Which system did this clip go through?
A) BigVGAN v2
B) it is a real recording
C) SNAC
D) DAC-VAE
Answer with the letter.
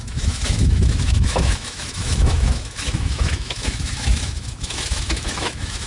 D